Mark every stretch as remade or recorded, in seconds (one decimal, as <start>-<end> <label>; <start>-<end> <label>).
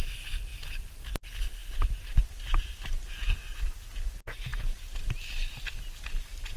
0.0-0.5 recorded; 0.5-1.1 remade; 1.1-6.6 recorded